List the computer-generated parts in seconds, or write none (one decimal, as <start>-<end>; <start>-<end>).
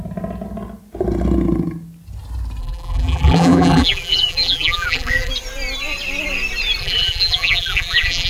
2.6-5.3; 6.8-8.3